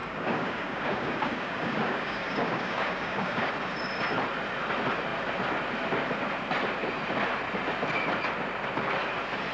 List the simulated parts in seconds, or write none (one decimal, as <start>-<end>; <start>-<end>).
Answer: 0.0-3.5